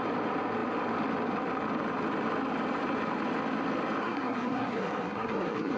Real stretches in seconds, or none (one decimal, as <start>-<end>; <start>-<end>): 0.0-4.0